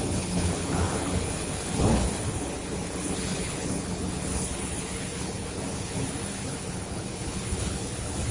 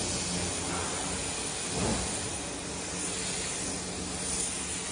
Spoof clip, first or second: first